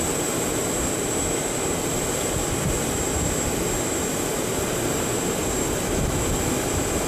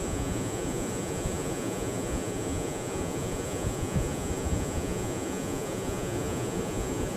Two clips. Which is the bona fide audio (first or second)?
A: first